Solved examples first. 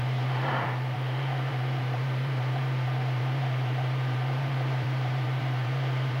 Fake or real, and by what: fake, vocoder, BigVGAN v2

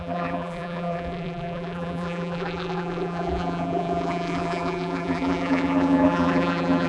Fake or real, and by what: fake, vocoder, BigVGAN v2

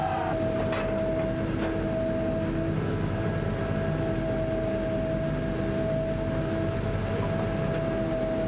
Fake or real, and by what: real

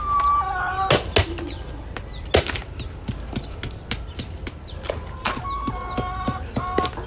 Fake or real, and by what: real